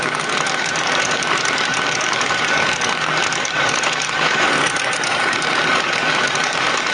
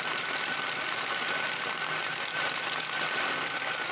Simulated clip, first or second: first